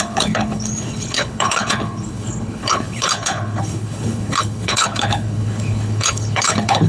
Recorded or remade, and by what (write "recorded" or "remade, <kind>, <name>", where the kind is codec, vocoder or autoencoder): remade, codec, HILCodec